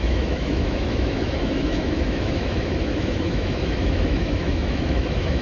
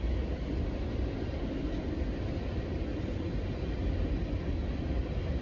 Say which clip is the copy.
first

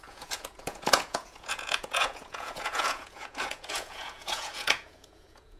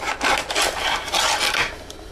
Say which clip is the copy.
first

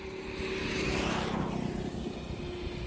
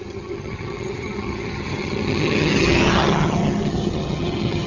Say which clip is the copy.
second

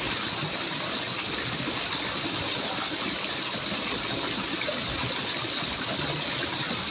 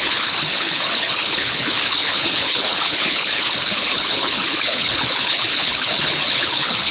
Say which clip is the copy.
second